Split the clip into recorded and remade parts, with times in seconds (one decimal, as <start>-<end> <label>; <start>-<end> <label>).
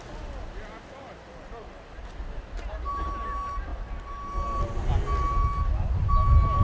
0.0-6.6 recorded